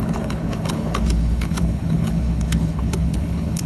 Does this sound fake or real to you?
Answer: fake